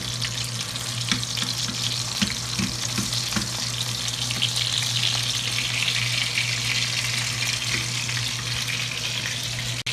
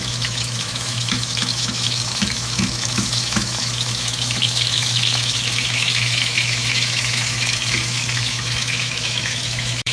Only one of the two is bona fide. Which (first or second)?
first